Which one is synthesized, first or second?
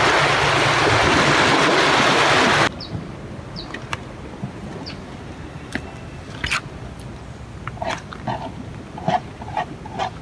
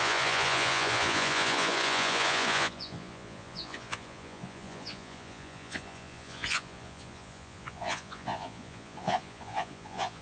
second